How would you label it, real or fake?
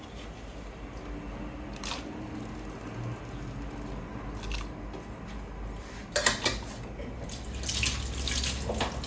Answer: real